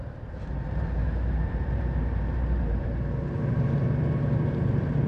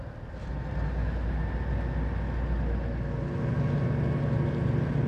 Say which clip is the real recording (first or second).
second